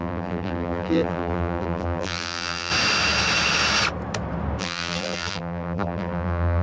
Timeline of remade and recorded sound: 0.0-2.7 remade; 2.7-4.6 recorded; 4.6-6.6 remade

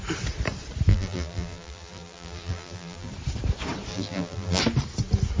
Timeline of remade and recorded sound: 0.0-0.9 recorded; 0.9-3.1 remade; 3.1-3.9 recorded; 3.9-4.6 remade; 4.6-5.4 recorded

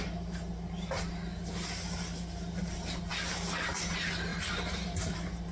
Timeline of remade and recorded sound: 0.0-4.3 recorded; 4.3-5.5 remade

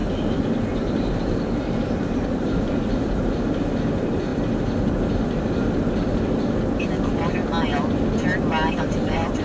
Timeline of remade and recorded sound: 0.0-4.3 remade; 4.3-8.8 recorded; 8.8-9.4 remade

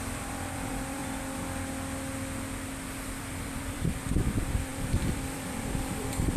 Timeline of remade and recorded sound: 0.0-1.0 remade; 1.0-3.2 recorded; 3.2-6.4 remade

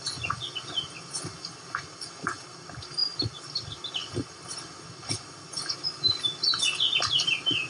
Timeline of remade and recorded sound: 0.0-7.7 recorded